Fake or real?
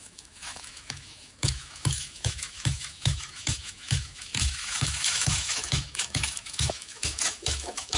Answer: fake